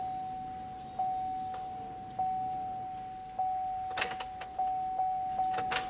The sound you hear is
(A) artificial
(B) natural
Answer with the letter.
B